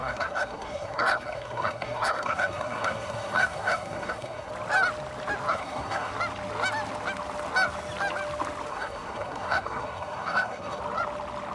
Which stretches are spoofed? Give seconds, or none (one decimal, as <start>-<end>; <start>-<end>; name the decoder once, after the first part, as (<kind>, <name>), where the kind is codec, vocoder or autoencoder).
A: 0.0-4.5 (codec, SNAC); 5.5-6.1; 8.7-10.8